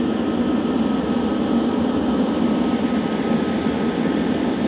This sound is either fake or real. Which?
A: real